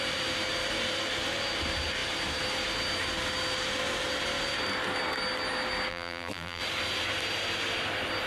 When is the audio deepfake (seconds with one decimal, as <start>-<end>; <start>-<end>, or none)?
5.9-6.6